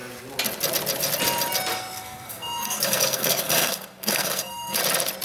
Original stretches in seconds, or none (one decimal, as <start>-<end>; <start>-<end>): 0.0-1.7; 4.8-5.2